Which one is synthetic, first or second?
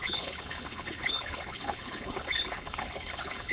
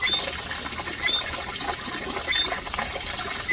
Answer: first